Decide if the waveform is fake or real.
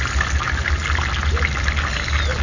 real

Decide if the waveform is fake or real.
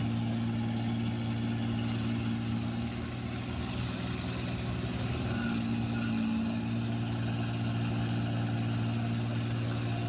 real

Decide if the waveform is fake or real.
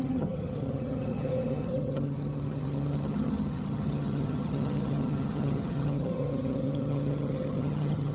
fake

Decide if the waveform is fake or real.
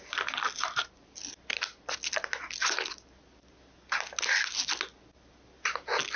real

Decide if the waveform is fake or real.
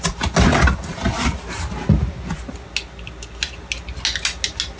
real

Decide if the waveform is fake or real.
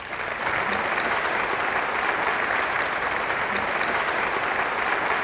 real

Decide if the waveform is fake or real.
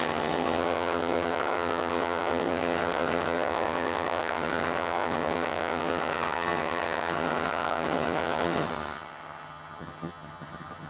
fake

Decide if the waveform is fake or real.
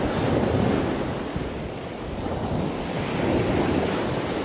real